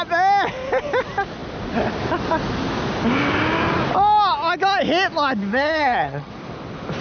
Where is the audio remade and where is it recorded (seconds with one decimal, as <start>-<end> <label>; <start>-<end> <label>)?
0.0-5.5 recorded; 5.5-6.3 remade; 6.3-7.0 recorded